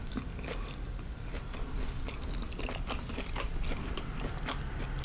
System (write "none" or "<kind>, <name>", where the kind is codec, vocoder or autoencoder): none